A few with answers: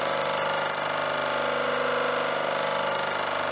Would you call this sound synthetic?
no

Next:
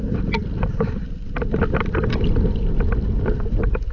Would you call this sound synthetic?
no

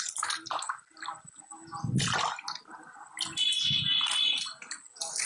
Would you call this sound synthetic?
no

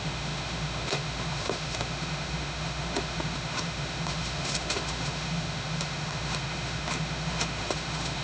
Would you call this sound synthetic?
yes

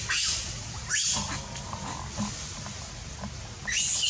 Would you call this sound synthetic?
no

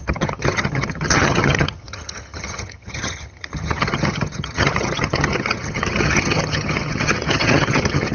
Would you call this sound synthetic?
yes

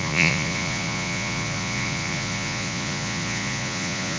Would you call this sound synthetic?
yes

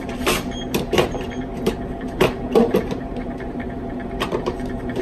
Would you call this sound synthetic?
yes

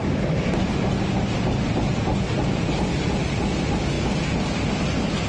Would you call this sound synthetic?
no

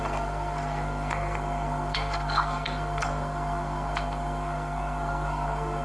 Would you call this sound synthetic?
yes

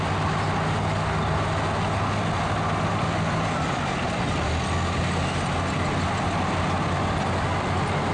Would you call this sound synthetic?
no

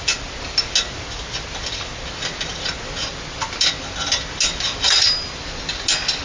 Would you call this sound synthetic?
no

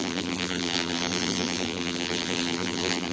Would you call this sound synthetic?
yes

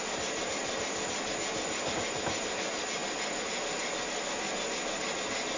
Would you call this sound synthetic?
no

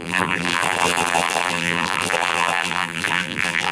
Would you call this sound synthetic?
yes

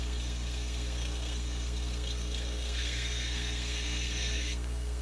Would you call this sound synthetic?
yes